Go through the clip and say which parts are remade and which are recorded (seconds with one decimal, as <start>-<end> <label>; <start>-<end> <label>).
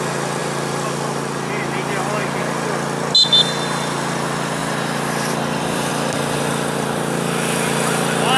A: 0.0-4.6 recorded; 4.6-5.9 remade; 5.9-8.4 recorded